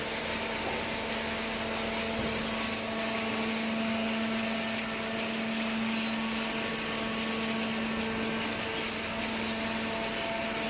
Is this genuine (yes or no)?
yes